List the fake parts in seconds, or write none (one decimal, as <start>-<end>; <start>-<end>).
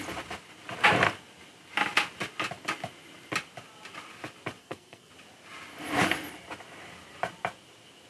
4.6-5.1